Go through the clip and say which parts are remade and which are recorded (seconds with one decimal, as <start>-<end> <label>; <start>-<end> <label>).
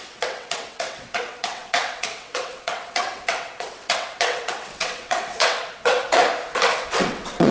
0.0-6.2 remade; 6.2-6.8 recorded; 6.8-7.5 remade